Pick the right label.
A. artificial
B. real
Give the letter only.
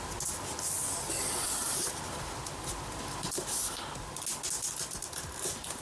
B